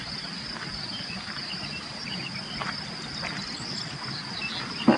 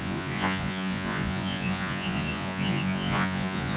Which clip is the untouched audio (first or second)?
first